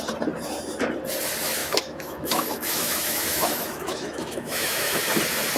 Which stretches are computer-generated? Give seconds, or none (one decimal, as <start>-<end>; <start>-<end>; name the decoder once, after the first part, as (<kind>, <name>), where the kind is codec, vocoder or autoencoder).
1.6-5.0 (autoencoder, DAC-VAE)